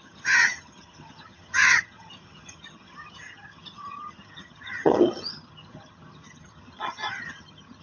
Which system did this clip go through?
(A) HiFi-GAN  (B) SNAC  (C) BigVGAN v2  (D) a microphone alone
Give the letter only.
A